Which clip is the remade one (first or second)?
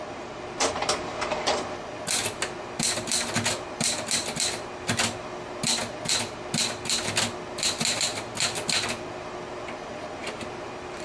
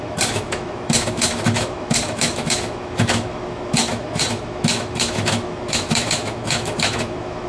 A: second